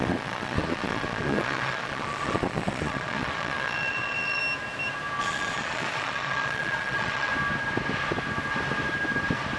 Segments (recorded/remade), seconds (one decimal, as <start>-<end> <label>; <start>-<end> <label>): 0.0-4.4 remade; 4.4-5.2 recorded; 5.2-7.3 remade; 7.3-9.6 recorded